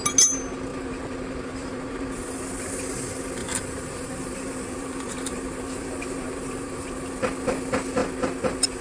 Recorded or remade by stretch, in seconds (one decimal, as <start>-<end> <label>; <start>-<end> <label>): 0.0-0.7 recorded; 0.7-2.3 remade; 2.3-3.4 recorded; 3.4-7.1 remade; 7.1-8.8 recorded